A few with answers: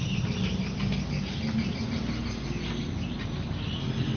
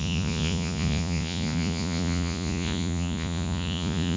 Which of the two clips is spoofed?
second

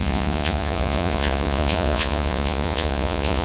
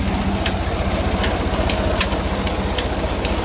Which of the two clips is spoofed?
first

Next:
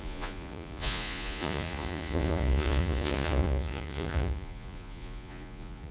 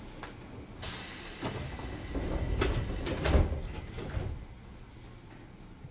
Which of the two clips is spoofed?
first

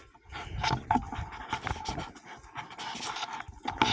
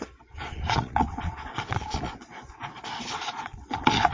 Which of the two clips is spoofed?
second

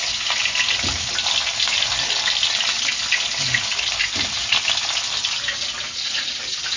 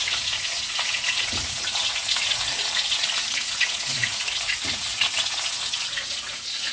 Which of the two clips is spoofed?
second